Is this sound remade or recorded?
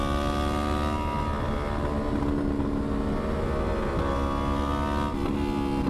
recorded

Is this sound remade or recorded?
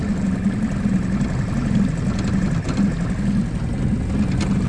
recorded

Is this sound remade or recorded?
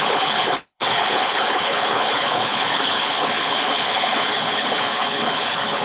remade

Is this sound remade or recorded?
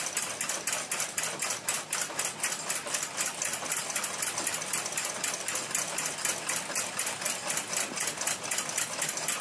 recorded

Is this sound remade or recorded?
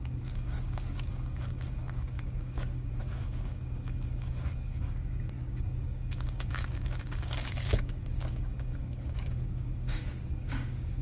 remade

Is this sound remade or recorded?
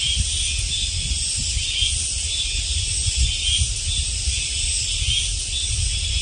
recorded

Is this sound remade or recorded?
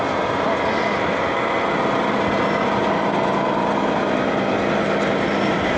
recorded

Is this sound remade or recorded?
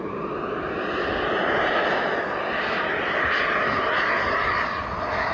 recorded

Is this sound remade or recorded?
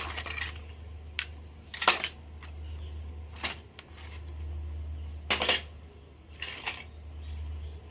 recorded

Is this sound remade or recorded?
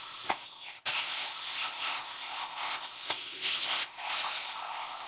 remade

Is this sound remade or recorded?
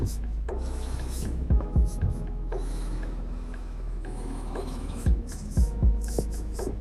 remade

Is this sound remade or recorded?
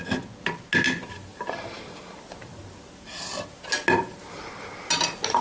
recorded